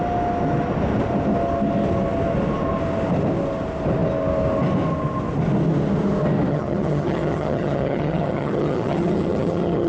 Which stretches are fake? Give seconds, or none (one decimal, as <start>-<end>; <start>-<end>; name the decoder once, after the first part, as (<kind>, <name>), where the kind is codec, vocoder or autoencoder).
6.5-9.9 (vocoder, HiFi-GAN)